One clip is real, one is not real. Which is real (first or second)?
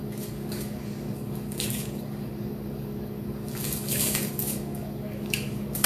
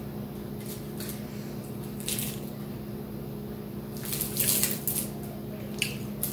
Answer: second